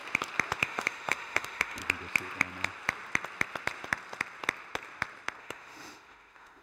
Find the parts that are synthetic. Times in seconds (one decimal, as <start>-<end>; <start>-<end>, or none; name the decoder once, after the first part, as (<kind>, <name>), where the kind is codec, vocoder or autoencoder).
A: 0.6-1.8 (autoencoder, DAC-VAE); 5.4-6.6